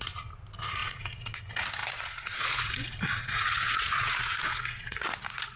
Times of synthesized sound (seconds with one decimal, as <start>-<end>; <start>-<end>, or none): 0.8-1.4; 1.8-5.6